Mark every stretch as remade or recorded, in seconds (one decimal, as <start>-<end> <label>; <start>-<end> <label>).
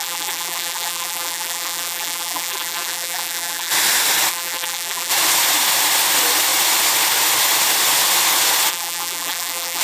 0.0-3.7 remade; 3.7-4.3 recorded; 4.3-5.1 remade; 5.1-8.7 recorded; 8.7-9.8 remade